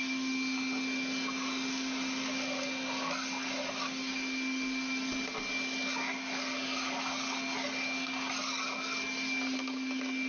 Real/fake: real